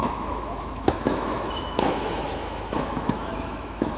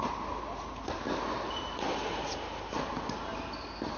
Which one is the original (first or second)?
second